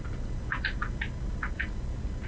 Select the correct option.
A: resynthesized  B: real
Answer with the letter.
B